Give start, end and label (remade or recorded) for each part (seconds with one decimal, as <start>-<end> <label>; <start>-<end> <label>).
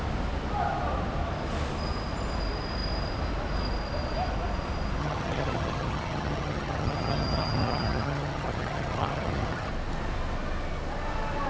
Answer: 0.0-5.0 recorded; 5.0-9.7 remade; 9.7-11.5 recorded